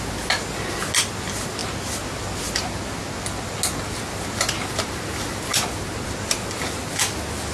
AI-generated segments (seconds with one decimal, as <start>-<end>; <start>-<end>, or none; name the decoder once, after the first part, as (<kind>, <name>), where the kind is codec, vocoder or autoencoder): none